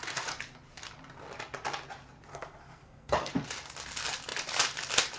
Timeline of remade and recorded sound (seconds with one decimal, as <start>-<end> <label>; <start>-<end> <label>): 0.0-2.3 recorded; 2.3-3.3 remade; 3.3-5.2 recorded